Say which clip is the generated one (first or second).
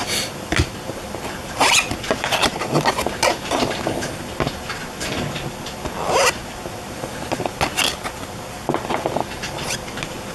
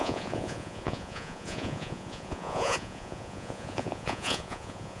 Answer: second